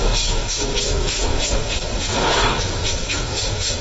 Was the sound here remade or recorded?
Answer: remade